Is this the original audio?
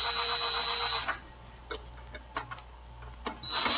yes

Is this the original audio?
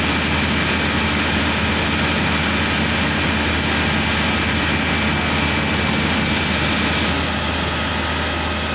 yes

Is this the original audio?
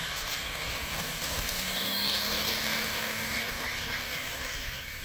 no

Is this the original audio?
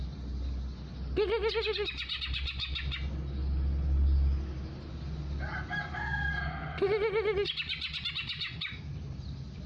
yes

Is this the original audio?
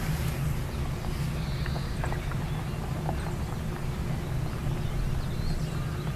yes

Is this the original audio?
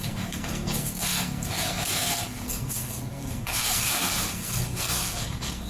no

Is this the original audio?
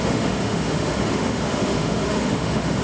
no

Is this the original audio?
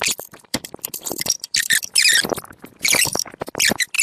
no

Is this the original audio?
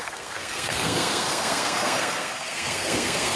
no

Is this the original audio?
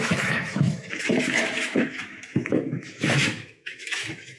no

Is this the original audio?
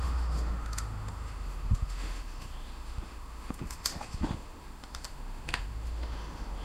no